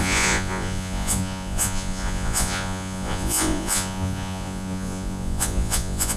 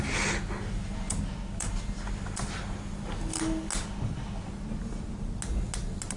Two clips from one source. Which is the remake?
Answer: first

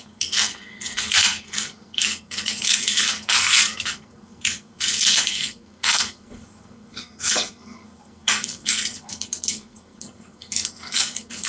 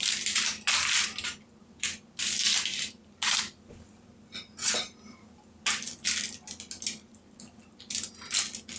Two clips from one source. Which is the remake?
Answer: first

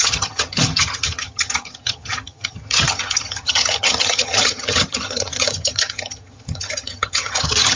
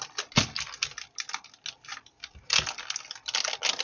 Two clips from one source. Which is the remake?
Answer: first